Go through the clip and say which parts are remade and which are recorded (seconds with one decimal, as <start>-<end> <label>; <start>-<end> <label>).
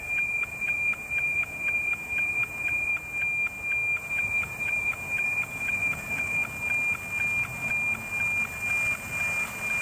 0.0-2.9 remade; 2.9-4.0 recorded; 4.0-6.4 remade; 6.4-9.8 recorded